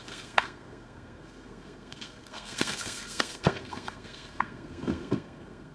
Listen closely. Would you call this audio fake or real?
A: fake